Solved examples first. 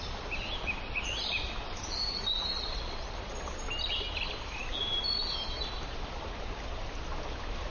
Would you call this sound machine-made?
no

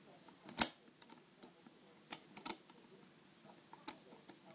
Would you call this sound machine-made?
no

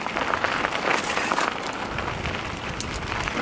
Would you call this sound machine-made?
no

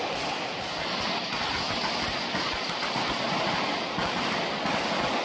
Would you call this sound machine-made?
no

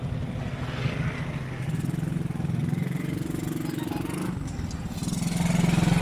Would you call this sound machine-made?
no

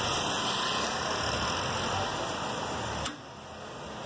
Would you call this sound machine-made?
no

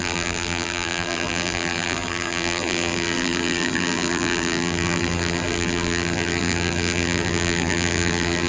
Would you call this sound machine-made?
yes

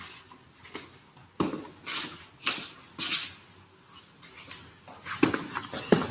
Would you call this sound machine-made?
no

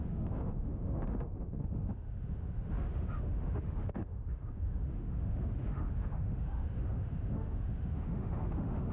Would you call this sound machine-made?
yes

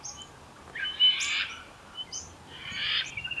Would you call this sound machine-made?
yes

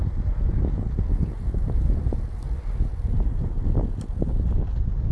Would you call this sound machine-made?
no